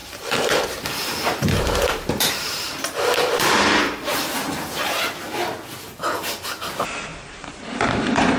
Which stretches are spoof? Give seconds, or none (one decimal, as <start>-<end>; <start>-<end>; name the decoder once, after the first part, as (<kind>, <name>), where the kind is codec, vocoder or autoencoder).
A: 0.0-5.0 (vocoder, BigVGAN v2); 7.1-8.4